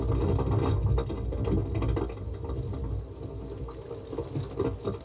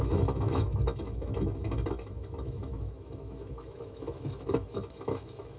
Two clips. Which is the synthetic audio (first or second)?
second